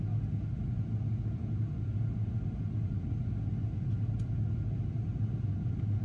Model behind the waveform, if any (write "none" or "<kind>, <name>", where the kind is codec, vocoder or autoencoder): none